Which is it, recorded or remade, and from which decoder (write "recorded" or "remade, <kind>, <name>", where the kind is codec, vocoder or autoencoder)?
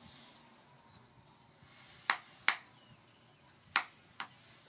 recorded